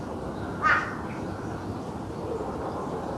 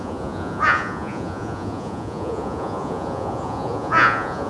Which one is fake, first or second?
second